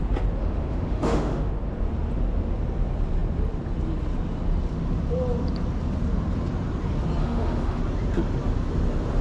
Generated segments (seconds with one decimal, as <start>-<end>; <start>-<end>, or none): 0.4-1.5; 7.2-7.8

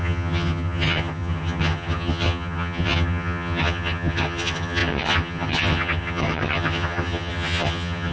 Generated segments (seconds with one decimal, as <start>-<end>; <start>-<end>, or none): 0.0-8.1

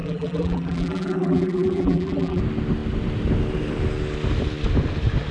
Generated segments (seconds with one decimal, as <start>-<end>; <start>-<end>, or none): 0.0-2.4

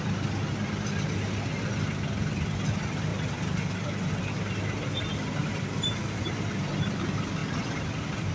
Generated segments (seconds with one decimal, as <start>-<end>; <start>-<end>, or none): 3.1-4.1; 5.4-6.0; 7.4-8.3

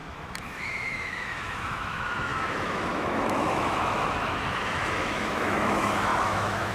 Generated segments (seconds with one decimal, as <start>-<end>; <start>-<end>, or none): 0.0-6.7

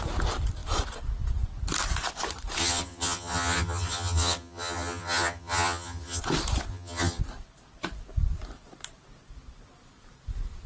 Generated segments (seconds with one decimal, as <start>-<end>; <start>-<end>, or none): 2.6-6.2; 6.7-7.2

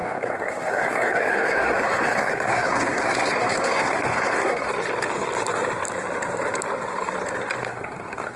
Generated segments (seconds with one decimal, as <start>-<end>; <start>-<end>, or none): 0.0-4.7; 7.6-8.4

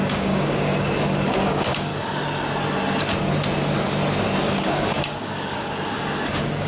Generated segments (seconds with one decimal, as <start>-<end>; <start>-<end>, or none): 0.0-1.9; 4.4-6.7